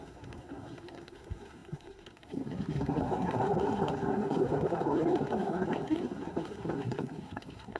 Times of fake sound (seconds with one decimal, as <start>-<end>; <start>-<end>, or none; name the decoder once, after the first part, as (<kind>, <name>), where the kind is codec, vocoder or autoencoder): 0.0-7.8 (codec, SNAC)